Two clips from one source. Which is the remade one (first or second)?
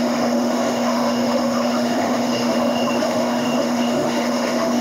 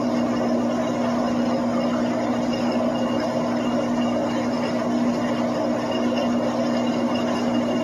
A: first